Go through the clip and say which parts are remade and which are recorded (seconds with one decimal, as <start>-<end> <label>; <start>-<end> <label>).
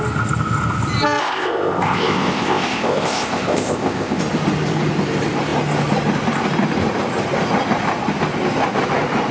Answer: 0.0-1.2 recorded; 1.2-4.2 remade; 4.2-9.3 recorded